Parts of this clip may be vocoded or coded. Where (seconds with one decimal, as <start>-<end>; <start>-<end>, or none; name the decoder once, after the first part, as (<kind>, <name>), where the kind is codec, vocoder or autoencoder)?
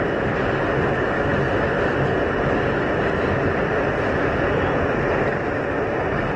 none